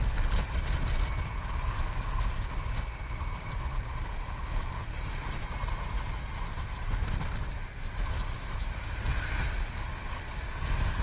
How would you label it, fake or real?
real